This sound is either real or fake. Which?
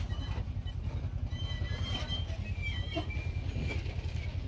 real